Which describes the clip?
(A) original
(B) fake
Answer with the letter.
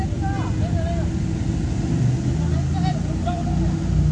A